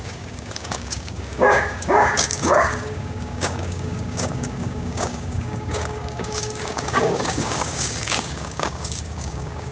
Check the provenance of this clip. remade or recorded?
remade